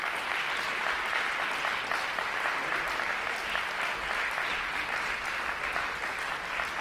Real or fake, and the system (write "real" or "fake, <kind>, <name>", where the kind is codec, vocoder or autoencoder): real